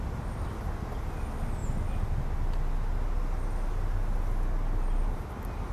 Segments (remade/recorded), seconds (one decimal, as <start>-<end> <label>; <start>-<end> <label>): 0.0-5.7 recorded